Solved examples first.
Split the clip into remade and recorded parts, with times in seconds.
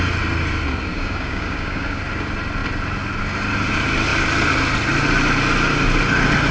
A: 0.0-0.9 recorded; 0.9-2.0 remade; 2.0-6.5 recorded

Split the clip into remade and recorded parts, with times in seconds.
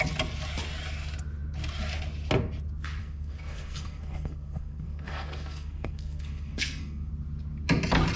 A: 0.0-3.0 recorded; 3.0-7.1 remade; 7.1-8.2 recorded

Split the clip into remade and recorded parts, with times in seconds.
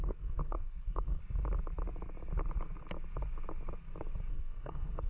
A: 0.0-1.2 remade; 1.2-4.3 recorded; 4.3-5.1 remade